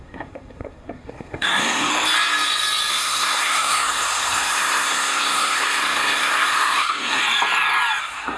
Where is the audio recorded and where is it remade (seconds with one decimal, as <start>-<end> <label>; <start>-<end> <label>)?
0.0-1.9 remade; 1.9-2.9 recorded; 2.9-7.2 remade; 7.2-8.0 recorded; 8.0-8.4 remade